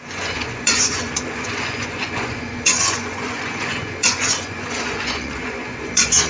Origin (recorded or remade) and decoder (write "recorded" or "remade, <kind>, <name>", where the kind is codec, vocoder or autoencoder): remade, vocoder, Vocos